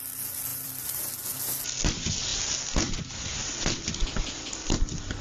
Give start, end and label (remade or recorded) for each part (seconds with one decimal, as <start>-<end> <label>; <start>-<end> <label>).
0.0-0.5 recorded; 0.5-1.1 remade; 1.1-4.0 recorded; 4.0-5.2 remade